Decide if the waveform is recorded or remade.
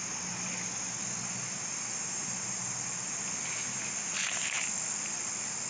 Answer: recorded